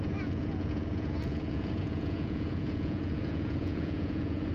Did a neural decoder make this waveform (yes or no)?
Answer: yes